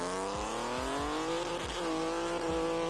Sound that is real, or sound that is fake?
real